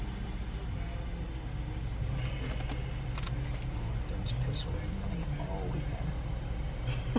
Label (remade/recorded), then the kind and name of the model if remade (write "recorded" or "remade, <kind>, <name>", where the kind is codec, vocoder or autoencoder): recorded